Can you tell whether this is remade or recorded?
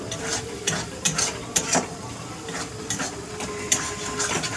remade